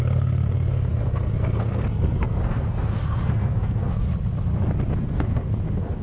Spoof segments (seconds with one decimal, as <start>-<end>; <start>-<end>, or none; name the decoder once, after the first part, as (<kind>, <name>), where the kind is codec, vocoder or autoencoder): 0.0-4.1 (codec, SNAC); 5.0-6.0